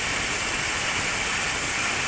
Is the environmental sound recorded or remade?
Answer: recorded